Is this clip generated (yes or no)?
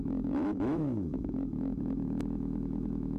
yes